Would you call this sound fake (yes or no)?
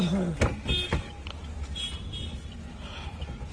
no